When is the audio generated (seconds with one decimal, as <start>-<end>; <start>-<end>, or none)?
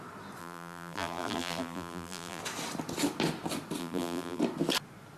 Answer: 0.4-2.4; 3.8-4.4